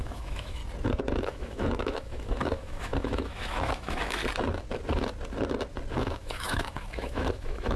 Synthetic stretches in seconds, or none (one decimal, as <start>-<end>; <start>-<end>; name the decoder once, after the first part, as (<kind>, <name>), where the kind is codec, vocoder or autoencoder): 0.0-0.6 (autoencoder, DAC-VAE); 1.2-4.2; 6.0-7.8